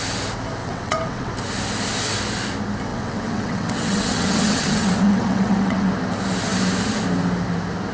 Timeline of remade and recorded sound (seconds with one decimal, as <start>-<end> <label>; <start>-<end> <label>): 0.0-0.6 recorded; 0.6-1.3 remade; 1.3-2.9 recorded; 2.9-5.9 remade; 5.9-7.9 recorded